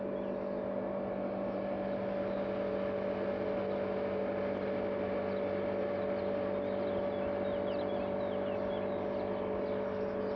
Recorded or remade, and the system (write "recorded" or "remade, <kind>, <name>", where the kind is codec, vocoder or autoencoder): recorded